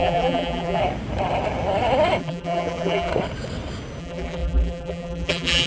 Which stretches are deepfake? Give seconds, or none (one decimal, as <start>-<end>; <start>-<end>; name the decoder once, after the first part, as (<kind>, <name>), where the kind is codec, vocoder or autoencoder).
0.0-0.8 (vocoder, BigVGAN v2); 2.2-3.1; 4.0-5.7

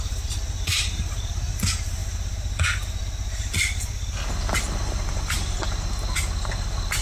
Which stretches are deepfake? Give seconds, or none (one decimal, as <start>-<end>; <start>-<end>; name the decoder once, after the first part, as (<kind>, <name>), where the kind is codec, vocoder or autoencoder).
0.0-2.0 (vocoder, BigVGAN v2); 5.1-7.0

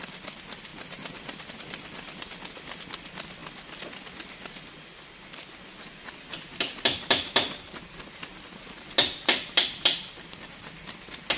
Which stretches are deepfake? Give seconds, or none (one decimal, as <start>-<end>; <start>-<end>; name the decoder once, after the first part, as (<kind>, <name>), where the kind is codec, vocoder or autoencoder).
none

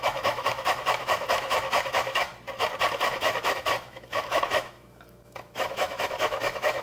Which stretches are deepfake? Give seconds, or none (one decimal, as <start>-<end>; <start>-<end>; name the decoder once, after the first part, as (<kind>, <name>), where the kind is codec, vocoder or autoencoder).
0.0-2.3 (autoencoder, DAC-VAE); 2.9-6.8

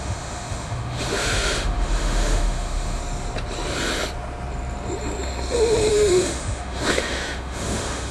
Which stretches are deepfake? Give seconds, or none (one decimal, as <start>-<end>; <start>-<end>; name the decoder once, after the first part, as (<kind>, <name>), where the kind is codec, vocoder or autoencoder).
0.0-3.0 (autoencoder, DAC-VAE); 5.9-8.1